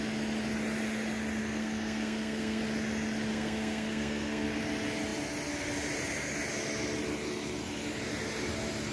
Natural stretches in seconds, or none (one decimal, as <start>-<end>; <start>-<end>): 0.0-1.4; 2.6-3.3; 4.6-8.9